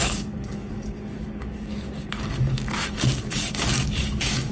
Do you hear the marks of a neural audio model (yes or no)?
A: yes